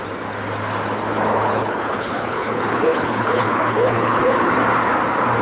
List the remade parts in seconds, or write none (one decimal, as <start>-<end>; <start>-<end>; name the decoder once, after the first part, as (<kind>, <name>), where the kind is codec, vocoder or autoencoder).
1.3-4.5 (codec, HILCodec)